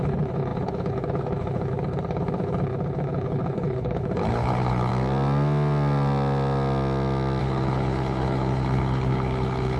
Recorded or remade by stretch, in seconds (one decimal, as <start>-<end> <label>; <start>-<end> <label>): 0.0-4.9 remade; 4.9-7.4 recorded; 7.4-9.8 remade